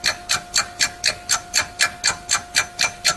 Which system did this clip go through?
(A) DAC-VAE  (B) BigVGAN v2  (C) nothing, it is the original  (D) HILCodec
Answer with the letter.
C